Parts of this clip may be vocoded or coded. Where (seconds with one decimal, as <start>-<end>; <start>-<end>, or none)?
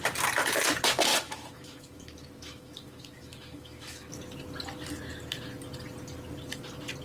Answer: 1.1-4.1